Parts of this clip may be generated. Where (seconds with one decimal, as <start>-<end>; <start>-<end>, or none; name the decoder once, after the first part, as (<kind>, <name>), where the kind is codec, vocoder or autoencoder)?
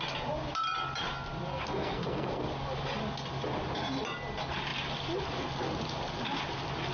1.5-2.4 (codec, SNAC)